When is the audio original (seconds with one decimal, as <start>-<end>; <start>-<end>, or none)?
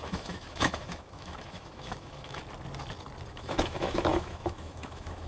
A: 2.4-3.3